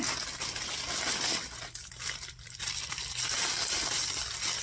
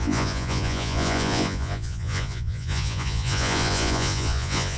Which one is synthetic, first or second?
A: second